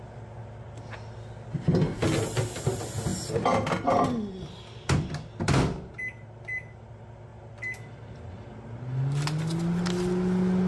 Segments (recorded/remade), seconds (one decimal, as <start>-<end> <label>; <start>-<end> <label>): 0.0-10.7 recorded

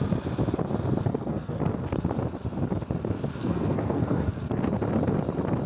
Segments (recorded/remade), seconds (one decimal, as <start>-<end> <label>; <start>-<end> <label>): 0.0-1.1 recorded; 1.1-1.6 remade; 1.6-3.4 recorded; 3.4-4.4 remade; 4.4-5.7 recorded

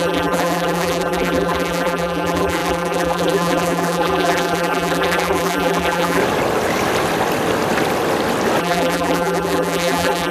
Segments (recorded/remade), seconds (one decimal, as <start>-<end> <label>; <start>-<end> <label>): 0.0-6.2 remade; 6.2-8.6 recorded; 8.6-10.3 remade

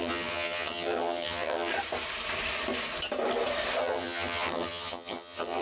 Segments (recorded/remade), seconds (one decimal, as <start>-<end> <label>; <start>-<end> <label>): 0.0-1.7 remade; 1.7-3.8 recorded; 3.8-5.6 remade

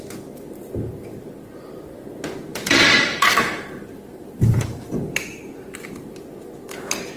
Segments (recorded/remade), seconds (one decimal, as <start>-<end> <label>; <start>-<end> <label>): 0.0-2.5 recorded; 2.5-5.4 remade; 5.4-7.2 recorded

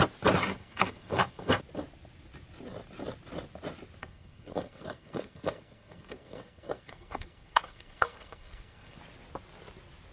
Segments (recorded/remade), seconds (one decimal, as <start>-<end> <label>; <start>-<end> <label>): 0.0-0.5 recorded; 0.5-1.5 remade; 1.5-4.0 recorded; 4.0-9.0 remade; 9.0-10.1 recorded

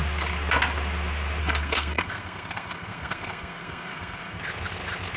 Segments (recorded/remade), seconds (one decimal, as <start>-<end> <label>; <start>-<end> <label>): 0.0-1.4 recorded; 1.4-4.4 remade; 4.4-5.2 recorded